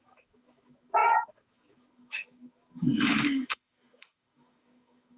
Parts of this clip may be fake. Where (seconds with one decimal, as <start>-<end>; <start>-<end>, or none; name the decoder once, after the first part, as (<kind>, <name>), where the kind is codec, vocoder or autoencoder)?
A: 0.0-5.2 (autoencoder, DAC-VAE)